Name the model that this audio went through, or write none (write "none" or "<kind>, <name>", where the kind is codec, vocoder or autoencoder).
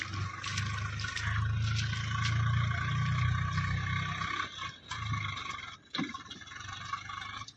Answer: none